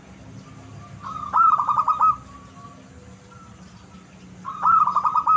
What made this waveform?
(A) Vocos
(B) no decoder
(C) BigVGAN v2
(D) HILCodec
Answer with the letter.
B